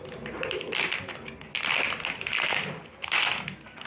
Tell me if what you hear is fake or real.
real